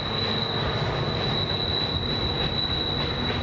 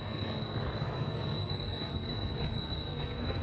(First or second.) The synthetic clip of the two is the second